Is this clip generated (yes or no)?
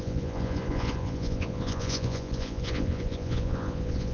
yes